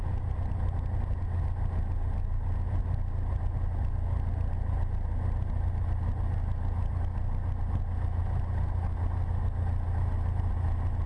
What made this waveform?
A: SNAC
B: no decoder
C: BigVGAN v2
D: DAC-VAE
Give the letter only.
B